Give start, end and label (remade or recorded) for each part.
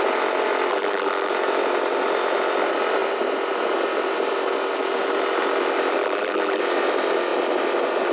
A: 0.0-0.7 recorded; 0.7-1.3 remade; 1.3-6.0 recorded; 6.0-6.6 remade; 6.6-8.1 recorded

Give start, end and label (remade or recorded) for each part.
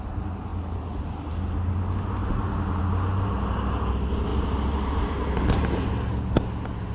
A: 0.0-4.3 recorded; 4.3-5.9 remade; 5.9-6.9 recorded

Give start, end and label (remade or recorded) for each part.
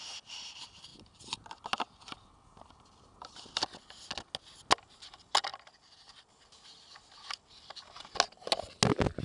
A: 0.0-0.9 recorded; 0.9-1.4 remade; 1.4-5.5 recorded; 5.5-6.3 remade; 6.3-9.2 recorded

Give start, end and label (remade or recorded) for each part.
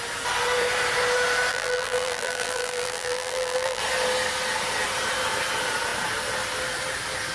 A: 0.0-1.5 recorded; 1.5-3.8 remade; 3.8-7.3 recorded